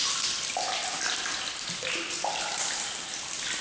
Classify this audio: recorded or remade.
recorded